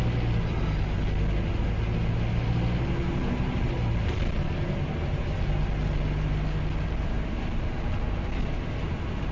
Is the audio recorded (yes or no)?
yes